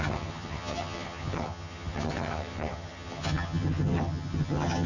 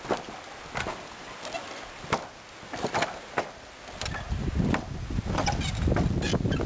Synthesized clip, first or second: first